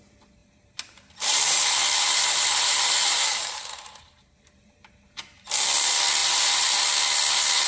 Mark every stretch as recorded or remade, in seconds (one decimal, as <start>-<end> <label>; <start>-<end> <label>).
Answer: 0.0-0.4 recorded; 0.4-4.7 remade; 4.7-6.2 recorded; 6.2-6.8 remade; 6.8-7.7 recorded